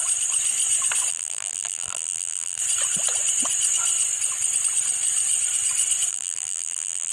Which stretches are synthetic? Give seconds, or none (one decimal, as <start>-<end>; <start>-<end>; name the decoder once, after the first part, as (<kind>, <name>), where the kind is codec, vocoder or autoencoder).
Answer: 1.1-2.6 (vocoder, BigVGAN v2); 6.1-7.1